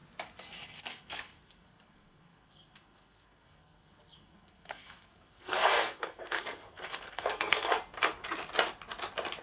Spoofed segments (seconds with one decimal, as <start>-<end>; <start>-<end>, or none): 0.8-7.7